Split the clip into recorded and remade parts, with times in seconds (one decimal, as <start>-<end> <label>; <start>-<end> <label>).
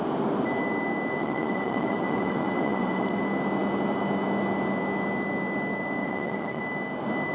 0.0-1.2 recorded; 1.2-3.2 remade; 3.2-6.0 recorded; 6.0-6.6 remade; 6.6-7.3 recorded